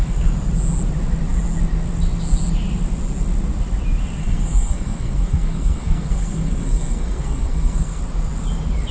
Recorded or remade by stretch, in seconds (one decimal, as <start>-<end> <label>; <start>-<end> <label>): 0.0-4.2 recorded; 4.2-8.0 remade; 8.0-8.9 recorded